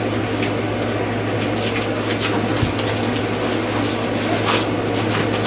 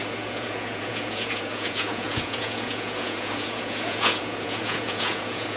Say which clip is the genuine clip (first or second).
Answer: first